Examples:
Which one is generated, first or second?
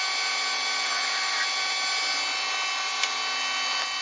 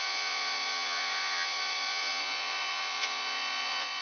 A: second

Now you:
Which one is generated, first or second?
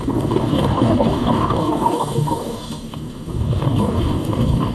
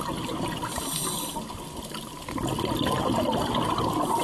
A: first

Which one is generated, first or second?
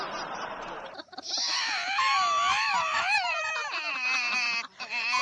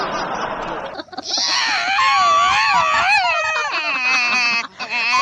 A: first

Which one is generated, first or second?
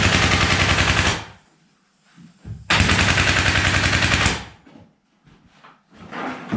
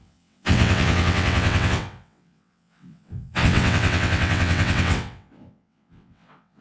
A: second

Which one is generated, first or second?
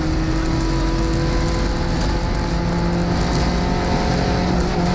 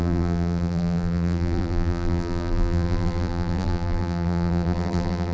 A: second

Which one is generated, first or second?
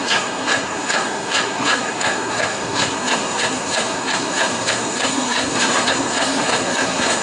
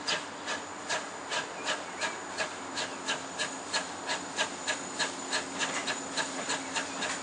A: first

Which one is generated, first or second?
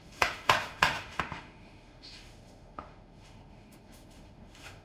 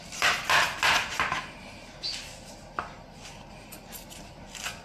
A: first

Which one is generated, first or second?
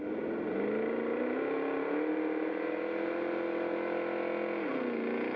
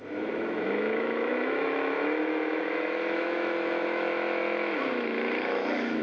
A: second